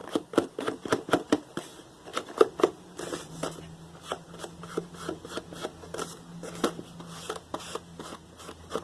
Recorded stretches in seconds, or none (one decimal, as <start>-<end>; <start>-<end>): 0.0-8.8